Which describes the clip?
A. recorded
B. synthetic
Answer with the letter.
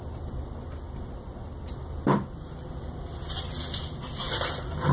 A